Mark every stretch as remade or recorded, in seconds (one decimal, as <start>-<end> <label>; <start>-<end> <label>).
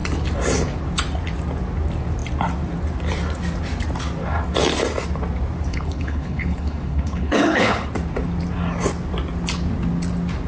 0.0-5.7 recorded; 5.7-7.9 remade; 7.9-10.5 recorded